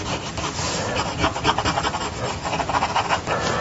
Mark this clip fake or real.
real